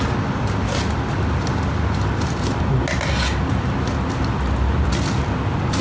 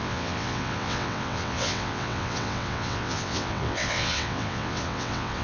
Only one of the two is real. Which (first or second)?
first